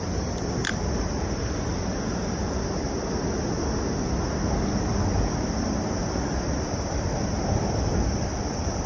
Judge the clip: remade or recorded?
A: recorded